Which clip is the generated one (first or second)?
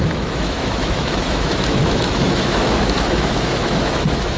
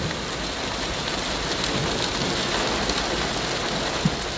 first